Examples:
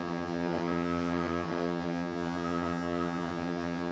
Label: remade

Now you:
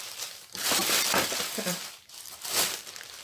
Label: remade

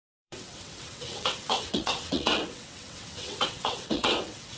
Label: remade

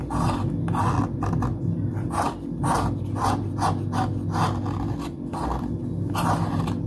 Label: recorded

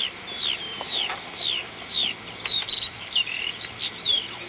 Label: remade